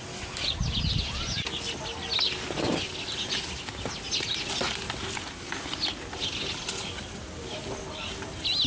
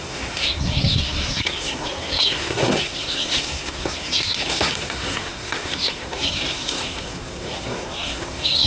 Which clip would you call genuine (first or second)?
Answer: first